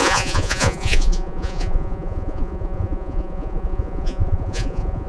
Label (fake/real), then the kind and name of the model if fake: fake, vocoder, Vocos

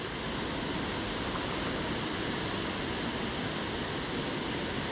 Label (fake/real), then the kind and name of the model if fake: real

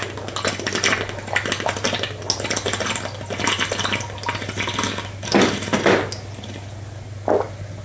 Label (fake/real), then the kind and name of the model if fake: real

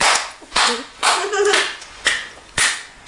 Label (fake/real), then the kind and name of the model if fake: fake, vocoder, Vocos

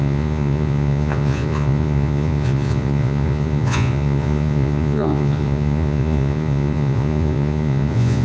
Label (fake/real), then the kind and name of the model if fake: fake, vocoder, Vocos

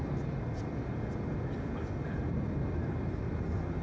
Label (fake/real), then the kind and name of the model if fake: real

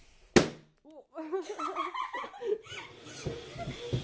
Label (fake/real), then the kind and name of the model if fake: real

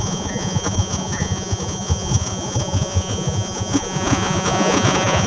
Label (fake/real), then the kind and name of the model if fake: fake, vocoder, Vocos